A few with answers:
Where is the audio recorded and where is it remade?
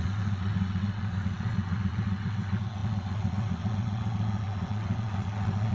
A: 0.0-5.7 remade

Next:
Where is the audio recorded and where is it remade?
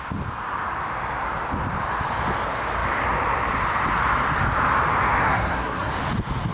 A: 0.0-5.2 recorded; 5.2-5.9 remade; 5.9-6.5 recorded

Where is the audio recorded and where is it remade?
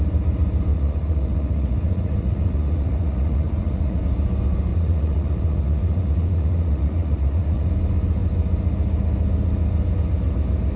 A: 0.0-0.7 recorded; 0.7-4.0 remade; 4.0-4.7 recorded; 4.7-7.7 remade; 7.7-10.8 recorded